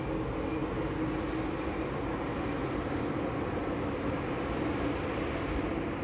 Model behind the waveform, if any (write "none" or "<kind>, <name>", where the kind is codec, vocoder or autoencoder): none